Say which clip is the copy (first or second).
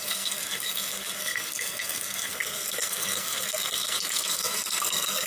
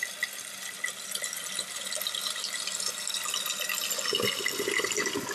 first